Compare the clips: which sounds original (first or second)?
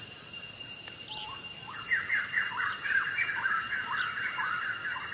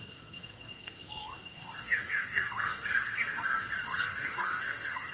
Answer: first